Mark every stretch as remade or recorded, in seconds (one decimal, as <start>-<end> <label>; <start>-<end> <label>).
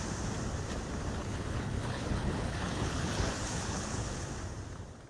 0.0-1.2 recorded; 1.2-4.3 remade; 4.3-5.1 recorded